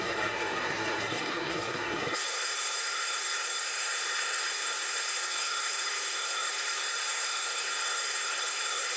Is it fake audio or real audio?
fake